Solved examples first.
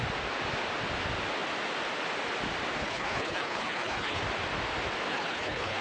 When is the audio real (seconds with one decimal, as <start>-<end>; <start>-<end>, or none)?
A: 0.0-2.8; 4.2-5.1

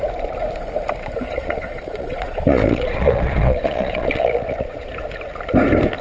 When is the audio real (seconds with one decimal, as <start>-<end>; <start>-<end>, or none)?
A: 0.0-1.3; 4.9-6.0

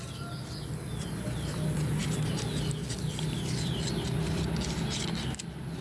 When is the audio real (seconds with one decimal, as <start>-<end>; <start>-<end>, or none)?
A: 0.0-5.8